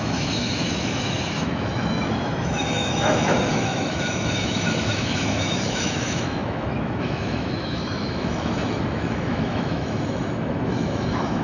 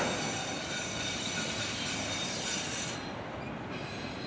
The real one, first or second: second